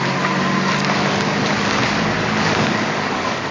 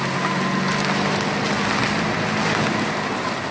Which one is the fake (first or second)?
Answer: first